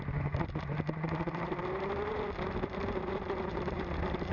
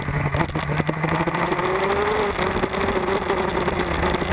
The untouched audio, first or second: second